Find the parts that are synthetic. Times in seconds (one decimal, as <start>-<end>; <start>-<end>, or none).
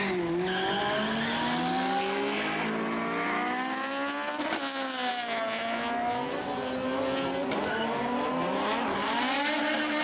none